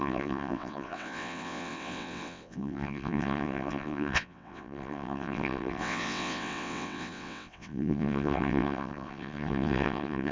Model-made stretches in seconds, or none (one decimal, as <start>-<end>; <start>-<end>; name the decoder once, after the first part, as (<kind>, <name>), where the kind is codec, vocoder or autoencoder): 0.0-10.3 (vocoder, WaveNeXt)